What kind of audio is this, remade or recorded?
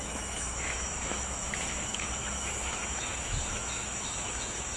remade